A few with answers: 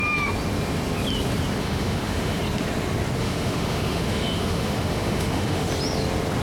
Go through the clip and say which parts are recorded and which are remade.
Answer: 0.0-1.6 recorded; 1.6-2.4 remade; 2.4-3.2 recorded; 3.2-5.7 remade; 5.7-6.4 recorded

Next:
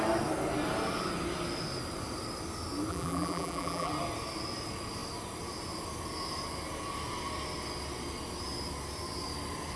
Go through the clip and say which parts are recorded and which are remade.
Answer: 0.0-2.9 recorded; 2.9-3.9 remade; 3.9-9.8 recorded

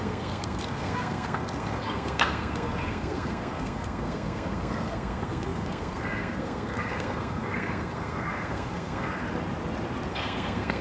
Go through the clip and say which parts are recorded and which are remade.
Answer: 0.0-9.2 remade; 9.2-10.1 recorded; 10.1-10.8 remade

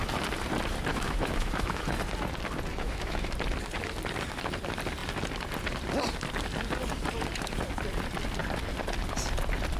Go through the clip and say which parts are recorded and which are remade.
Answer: 0.0-0.9 recorded; 0.9-1.8 remade; 1.8-2.7 recorded; 2.7-3.3 remade; 3.3-9.8 recorded

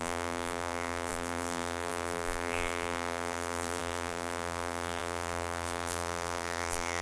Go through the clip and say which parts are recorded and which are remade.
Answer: 0.0-7.0 remade

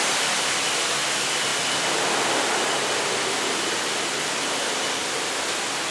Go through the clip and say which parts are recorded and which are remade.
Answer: 0.0-5.0 recorded; 5.0-5.5 remade; 5.5-5.9 recorded

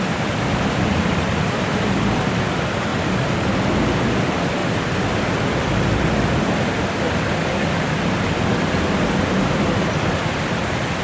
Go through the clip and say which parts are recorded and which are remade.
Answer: 0.0-2.9 remade; 2.9-4.0 recorded; 4.0-4.6 remade; 4.6-5.3 recorded; 5.3-11.0 remade

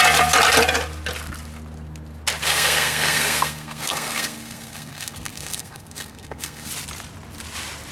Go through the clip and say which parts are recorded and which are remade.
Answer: 0.0-2.4 recorded; 2.4-6.7 remade; 6.7-7.9 recorded